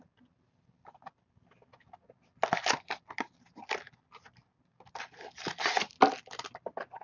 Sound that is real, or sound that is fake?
real